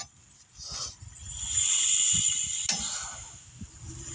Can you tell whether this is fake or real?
real